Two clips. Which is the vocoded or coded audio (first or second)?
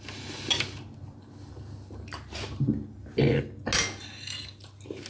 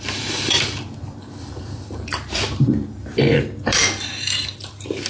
second